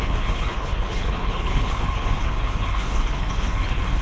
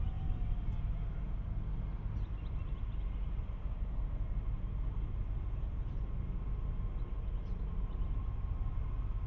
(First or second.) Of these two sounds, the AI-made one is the first